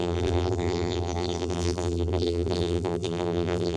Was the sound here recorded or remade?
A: remade